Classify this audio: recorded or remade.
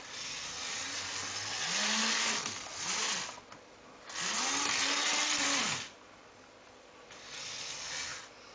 recorded